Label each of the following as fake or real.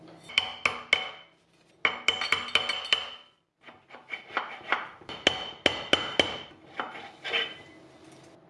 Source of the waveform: real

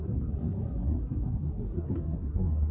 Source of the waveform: fake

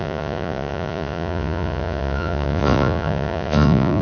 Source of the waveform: fake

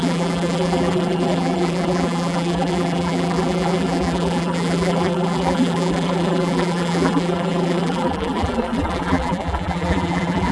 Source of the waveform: fake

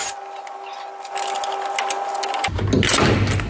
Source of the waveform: real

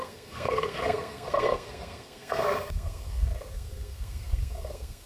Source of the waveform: fake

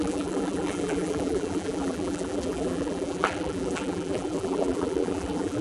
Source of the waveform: fake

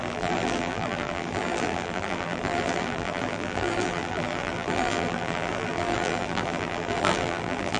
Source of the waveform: fake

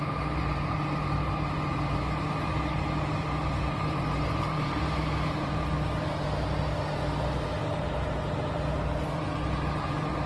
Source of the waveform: fake